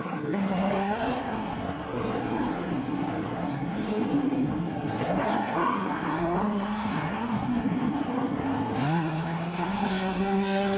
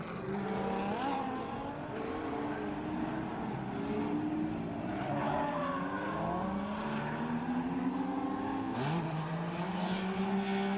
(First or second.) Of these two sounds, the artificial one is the first